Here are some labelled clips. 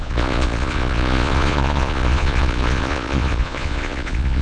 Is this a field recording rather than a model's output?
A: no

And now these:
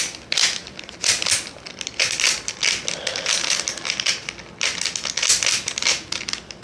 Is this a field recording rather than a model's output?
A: yes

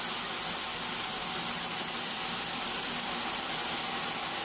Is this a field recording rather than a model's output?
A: yes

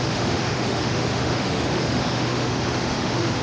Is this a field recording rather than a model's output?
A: no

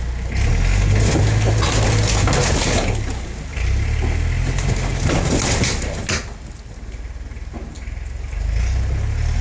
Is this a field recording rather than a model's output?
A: yes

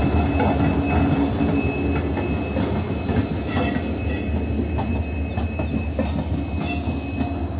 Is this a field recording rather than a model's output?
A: yes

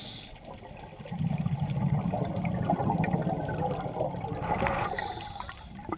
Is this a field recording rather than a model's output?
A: yes